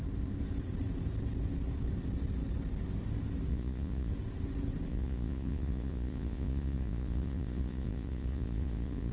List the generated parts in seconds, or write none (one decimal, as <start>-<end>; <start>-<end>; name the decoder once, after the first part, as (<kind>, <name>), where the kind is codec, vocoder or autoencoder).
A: 3.5-4.1 (vocoder, Vocos); 4.9-9.1